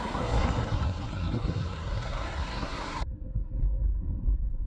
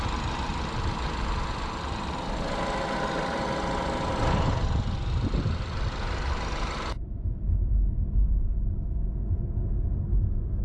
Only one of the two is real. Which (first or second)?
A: second